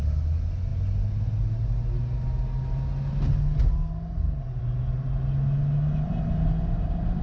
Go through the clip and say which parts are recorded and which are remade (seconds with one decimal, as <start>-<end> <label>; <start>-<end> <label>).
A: 0.0-7.2 recorded